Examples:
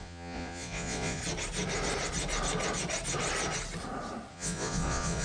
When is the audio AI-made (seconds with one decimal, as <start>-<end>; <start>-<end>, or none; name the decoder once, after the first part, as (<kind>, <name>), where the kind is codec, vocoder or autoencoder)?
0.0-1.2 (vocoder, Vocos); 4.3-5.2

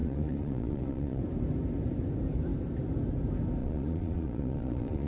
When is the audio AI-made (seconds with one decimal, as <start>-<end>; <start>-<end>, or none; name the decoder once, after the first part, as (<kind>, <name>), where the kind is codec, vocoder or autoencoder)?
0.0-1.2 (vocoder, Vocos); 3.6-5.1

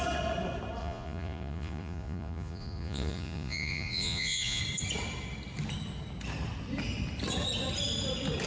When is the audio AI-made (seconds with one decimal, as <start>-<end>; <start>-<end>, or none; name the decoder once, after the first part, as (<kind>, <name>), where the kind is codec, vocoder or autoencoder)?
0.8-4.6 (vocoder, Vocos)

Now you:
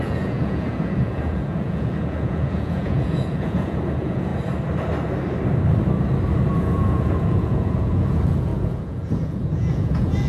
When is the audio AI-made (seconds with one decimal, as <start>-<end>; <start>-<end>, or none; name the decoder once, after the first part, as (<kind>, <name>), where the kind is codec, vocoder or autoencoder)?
0.0-4.3 (vocoder, Vocos); 6.6-10.3

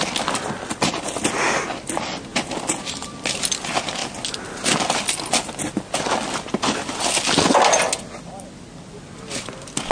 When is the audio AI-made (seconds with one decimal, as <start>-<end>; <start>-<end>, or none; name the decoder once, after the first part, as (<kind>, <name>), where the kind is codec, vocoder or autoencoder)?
none

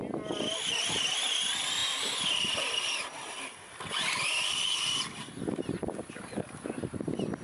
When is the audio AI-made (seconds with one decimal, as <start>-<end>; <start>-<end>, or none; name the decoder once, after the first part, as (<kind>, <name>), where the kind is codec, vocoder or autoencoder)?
none